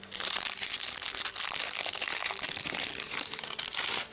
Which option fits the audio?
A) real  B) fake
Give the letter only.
A